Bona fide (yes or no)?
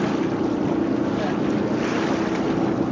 yes